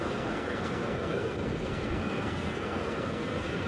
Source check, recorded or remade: remade